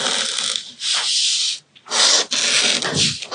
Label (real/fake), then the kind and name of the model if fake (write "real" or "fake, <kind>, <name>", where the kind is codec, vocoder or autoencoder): real